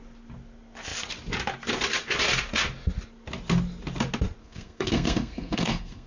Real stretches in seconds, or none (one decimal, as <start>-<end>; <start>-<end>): 0.0-4.4